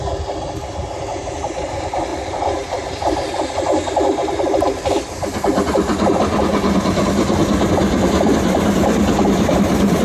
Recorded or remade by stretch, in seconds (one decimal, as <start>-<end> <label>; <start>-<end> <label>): 0.0-2.1 recorded; 2.1-3.4 remade; 3.4-10.0 recorded